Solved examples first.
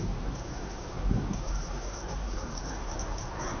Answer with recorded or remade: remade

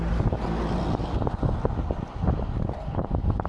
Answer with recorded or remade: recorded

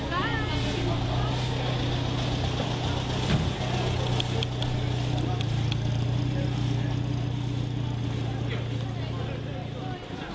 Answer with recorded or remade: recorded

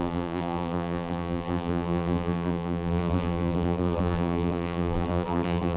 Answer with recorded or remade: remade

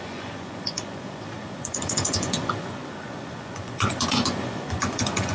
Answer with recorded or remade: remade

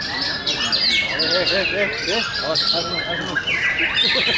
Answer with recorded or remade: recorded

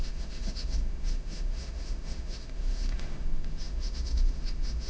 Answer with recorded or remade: remade